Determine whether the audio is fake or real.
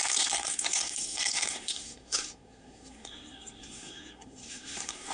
fake